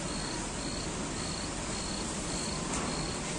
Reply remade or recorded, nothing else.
recorded